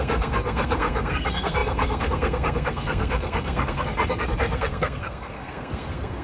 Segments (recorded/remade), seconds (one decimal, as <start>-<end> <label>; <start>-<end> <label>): 0.0-6.2 remade